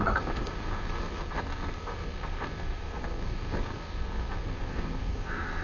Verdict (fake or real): fake